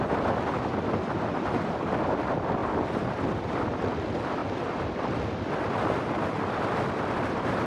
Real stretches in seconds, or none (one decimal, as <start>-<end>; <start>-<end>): none